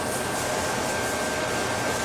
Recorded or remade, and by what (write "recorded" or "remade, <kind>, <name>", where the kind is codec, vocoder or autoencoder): recorded